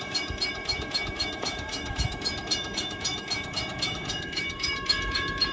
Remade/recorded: remade